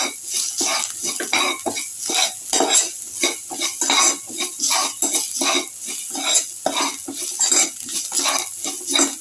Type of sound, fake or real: real